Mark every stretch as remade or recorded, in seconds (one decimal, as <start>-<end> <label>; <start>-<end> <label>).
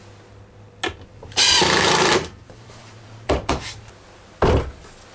0.0-1.1 recorded; 1.1-3.5 remade; 3.5-5.1 recorded